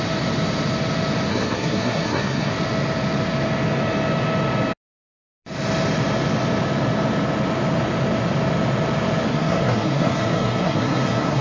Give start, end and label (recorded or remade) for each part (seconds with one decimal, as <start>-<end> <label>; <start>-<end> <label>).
0.0-1.3 recorded; 1.3-2.5 remade; 2.5-9.3 recorded; 9.3-11.4 remade